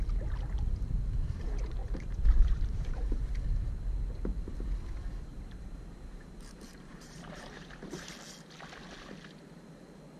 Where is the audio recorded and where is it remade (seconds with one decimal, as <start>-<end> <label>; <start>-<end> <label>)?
0.0-1.8 recorded; 1.8-3.2 remade; 3.2-5.3 recorded; 5.3-8.1 remade; 8.1-10.2 recorded